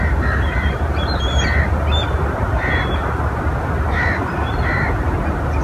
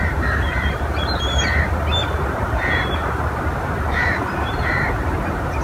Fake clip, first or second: second